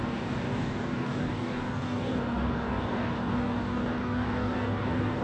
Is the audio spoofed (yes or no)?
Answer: yes